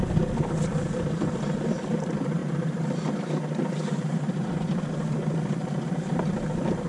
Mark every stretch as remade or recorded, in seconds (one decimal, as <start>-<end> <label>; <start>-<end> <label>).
0.0-2.4 recorded; 2.4-3.1 remade; 3.1-3.9 recorded; 3.9-4.7 remade; 4.7-6.9 recorded